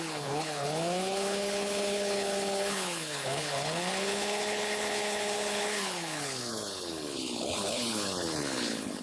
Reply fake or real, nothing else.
fake